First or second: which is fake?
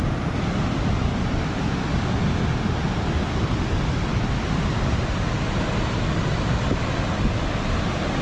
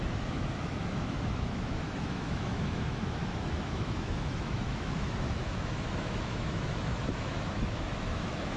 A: second